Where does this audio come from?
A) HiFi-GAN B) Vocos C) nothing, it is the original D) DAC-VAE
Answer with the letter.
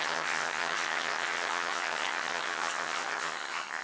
A